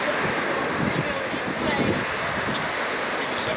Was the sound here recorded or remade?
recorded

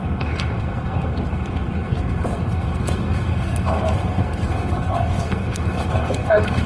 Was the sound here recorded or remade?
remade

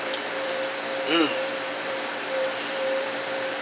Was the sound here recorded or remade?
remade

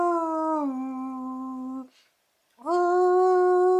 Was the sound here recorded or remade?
recorded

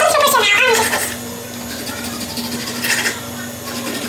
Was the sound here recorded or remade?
recorded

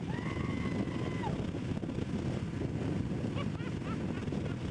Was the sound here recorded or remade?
recorded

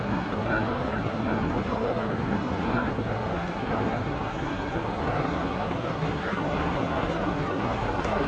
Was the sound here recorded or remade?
remade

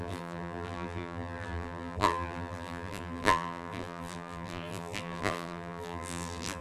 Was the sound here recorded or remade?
remade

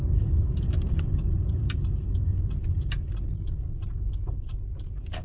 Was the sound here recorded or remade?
recorded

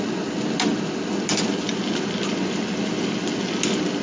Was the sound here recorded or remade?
recorded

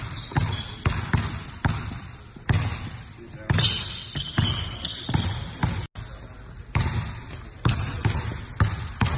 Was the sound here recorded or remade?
recorded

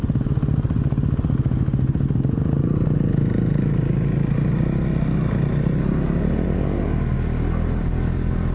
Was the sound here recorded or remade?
recorded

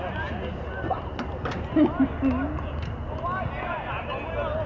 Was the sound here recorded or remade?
recorded